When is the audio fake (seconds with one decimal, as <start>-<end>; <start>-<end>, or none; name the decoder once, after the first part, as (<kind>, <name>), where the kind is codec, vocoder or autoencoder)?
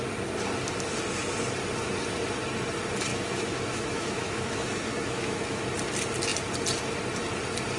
3.1-5.6 (autoencoder, DAC-VAE)